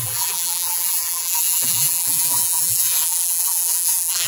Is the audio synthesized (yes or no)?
yes